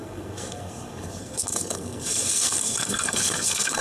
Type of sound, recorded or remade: remade